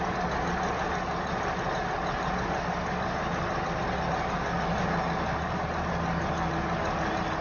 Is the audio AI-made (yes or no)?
no